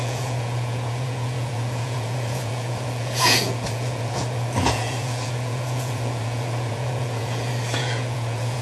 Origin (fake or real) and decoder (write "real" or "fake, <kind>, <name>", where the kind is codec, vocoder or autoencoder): fake, vocoder, Vocos